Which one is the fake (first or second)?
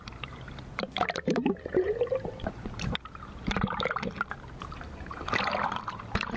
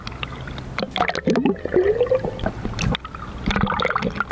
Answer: first